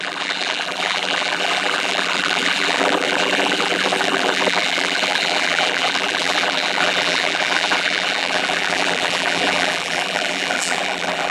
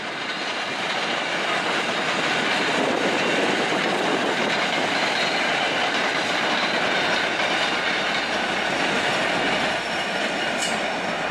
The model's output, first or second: first